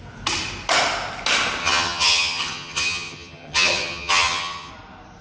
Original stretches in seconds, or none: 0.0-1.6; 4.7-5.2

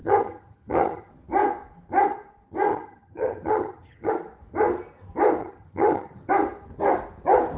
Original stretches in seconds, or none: 1.1-2.7; 4.1-5.4; 6.3-7.6

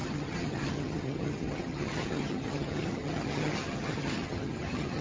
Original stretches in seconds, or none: none

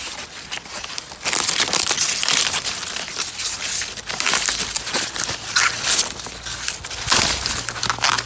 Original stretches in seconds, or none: 0.0-8.3

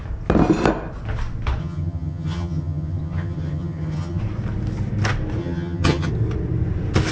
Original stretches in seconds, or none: 0.0-1.6; 4.2-5.4; 6.1-7.1

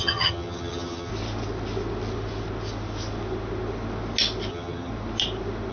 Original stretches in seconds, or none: 1.1-4.5; 4.9-5.7